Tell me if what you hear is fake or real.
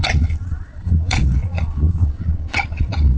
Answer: fake